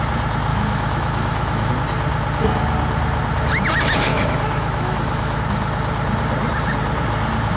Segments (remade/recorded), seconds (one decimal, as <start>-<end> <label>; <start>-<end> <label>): 0.0-0.5 recorded; 0.5-1.7 remade; 1.7-4.1 recorded; 4.1-5.4 remade; 5.4-7.6 recorded